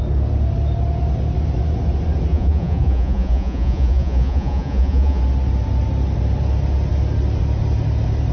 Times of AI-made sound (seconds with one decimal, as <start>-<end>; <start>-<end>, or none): 2.3-5.2